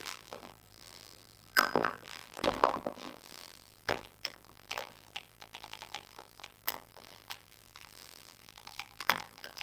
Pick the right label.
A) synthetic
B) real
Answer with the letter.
A